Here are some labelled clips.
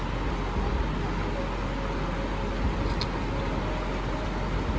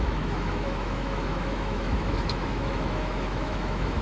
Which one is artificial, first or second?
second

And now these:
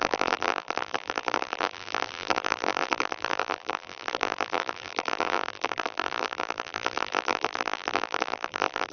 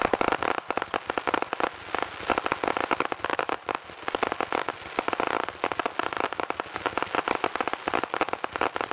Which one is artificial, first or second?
first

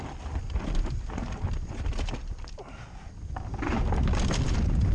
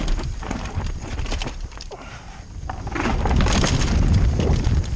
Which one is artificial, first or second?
second